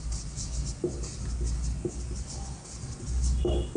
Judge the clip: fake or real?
real